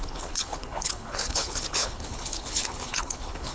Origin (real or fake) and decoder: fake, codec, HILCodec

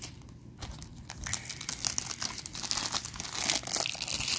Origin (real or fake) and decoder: real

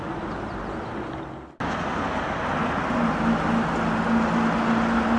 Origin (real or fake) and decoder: real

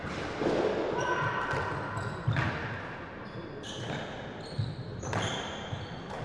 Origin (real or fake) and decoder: real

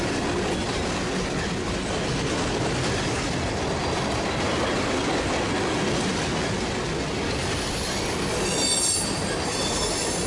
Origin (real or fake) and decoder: real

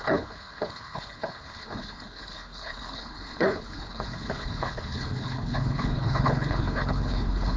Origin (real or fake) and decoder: fake, codec, HILCodec